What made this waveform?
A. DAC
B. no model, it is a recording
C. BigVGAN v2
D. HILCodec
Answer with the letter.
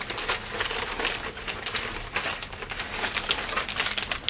B